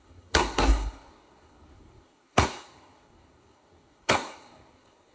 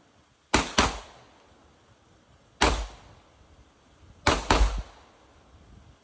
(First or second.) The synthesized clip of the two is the first